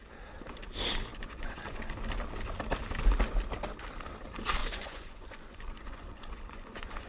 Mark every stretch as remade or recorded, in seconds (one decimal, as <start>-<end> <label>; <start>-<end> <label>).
0.0-1.1 recorded; 1.1-1.9 remade; 1.9-4.6 recorded; 4.6-7.1 remade